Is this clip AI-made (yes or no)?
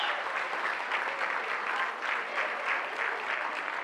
no